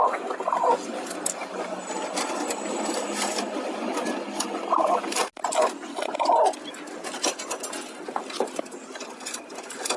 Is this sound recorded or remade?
recorded